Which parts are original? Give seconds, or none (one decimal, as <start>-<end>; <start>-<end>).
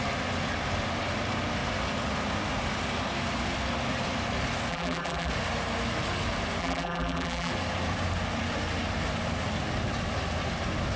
0.0-4.7; 5.3-6.6; 7.5-11.0